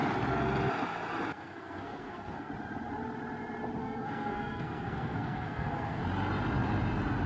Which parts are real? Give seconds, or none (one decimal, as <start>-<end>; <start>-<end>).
0.0-1.3; 2.5-3.8; 6.0-7.3